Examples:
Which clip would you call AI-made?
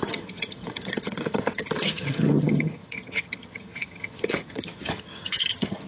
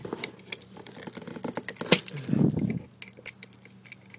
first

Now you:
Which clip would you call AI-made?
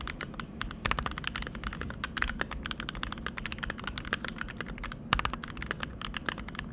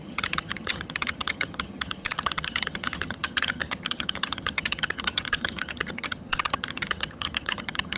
second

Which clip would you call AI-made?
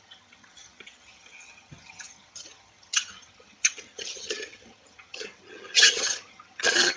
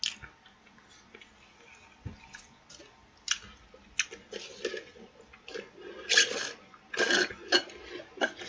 first